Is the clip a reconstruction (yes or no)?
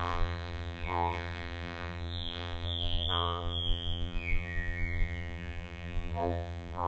yes